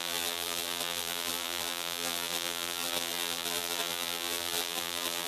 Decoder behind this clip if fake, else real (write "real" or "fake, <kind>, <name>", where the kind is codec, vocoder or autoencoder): fake, vocoder, BigVGAN v2